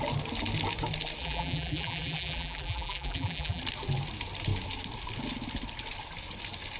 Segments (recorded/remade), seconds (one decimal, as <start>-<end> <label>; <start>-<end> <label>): 0.0-1.2 recorded; 1.2-3.6 remade; 3.6-6.8 recorded